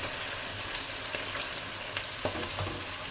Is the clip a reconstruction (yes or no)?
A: no